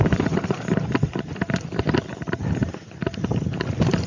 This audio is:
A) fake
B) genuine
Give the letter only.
B